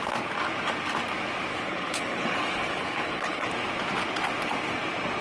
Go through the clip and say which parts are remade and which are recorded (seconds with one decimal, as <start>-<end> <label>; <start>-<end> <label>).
0.0-1.5 recorded; 1.5-3.5 remade; 3.5-5.2 recorded